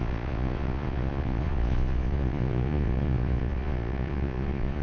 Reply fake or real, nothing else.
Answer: fake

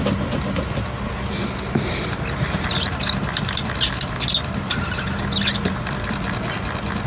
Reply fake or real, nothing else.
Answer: real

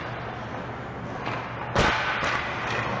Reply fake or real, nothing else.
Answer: real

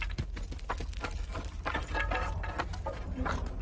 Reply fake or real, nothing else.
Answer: real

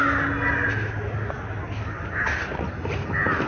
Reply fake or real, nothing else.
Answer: real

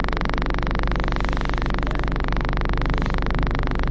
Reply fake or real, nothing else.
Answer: real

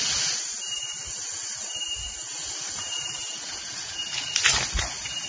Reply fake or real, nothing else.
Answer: real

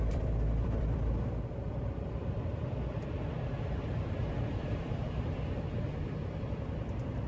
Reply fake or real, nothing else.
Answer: fake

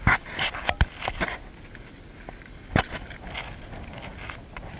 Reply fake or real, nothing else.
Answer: real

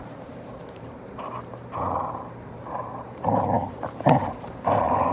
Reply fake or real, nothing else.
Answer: fake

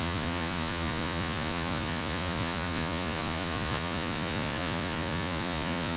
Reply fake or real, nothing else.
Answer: fake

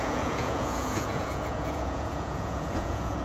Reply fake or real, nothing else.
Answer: fake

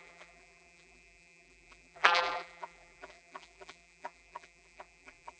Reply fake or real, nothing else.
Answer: fake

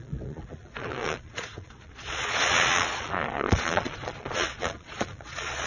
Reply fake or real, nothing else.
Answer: fake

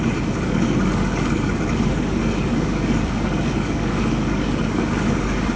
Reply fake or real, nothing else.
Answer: fake